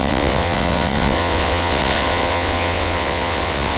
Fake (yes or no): yes